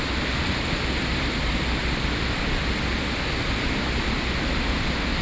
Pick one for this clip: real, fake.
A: real